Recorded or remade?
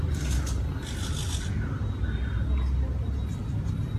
recorded